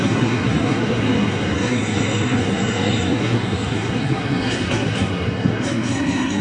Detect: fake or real fake